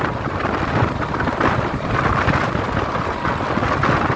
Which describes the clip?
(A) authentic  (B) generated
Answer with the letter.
B